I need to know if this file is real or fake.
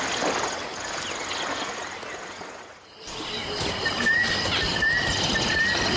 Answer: real